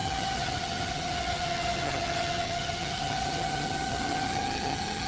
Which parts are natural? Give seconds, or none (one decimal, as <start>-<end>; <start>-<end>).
none

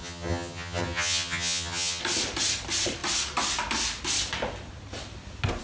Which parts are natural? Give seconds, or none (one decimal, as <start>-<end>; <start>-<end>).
2.0-5.6

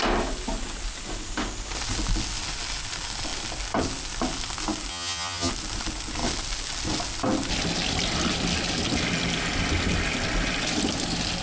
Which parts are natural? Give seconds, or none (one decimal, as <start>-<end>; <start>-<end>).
0.0-4.9; 5.5-11.4

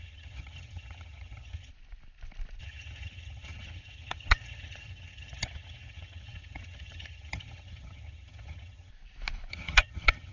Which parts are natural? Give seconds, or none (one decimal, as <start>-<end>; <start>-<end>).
1.7-2.6; 8.9-9.5

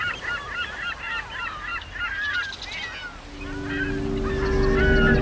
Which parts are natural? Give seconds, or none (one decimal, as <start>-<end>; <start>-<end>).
0.0-5.2

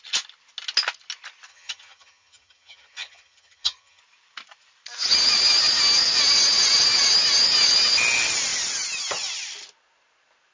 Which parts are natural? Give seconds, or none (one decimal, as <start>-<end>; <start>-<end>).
0.0-1.5; 4.0-10.5

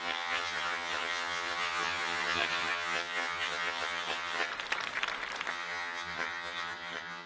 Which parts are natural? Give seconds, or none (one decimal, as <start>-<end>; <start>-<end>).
4.5-5.5

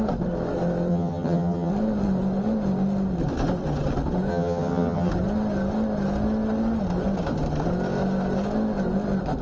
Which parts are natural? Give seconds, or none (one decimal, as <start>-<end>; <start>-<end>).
0.0-0.9; 1.7-4.3; 5.1-9.4